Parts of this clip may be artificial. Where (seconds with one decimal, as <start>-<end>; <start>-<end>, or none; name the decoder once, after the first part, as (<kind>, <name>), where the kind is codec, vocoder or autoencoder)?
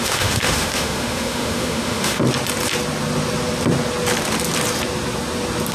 0.0-2.2 (autoencoder, DAC-VAE)